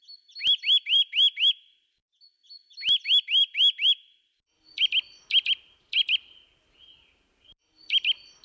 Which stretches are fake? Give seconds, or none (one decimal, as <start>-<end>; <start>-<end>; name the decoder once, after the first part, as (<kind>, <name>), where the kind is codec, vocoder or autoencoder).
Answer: none